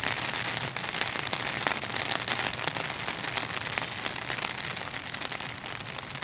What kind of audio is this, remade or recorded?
recorded